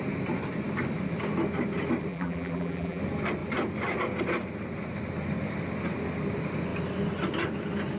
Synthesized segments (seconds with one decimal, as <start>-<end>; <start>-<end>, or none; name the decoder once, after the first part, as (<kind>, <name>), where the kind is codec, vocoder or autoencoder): 2.1-3.0 (vocoder, BigVGAN v2)